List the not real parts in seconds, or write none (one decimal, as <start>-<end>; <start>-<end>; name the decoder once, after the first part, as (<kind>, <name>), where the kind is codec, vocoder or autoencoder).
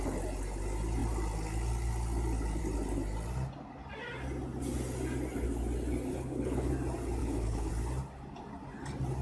6.1-6.7 (codec, HILCodec); 7.2-7.7